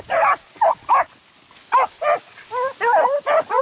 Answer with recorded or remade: recorded